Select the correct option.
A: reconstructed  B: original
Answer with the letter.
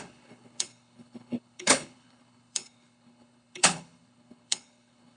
A